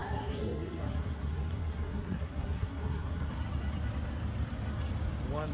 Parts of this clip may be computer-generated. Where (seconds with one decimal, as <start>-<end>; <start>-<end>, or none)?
0.0-3.3